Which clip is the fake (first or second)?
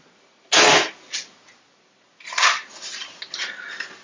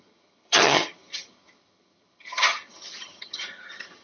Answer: second